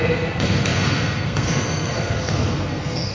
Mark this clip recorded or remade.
remade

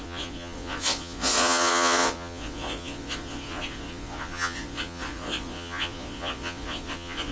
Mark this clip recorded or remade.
remade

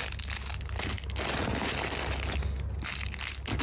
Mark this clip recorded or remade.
recorded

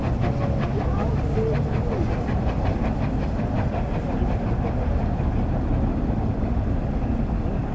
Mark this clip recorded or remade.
recorded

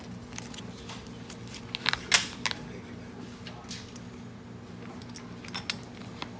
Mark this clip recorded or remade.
recorded